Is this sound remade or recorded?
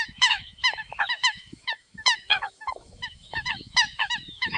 remade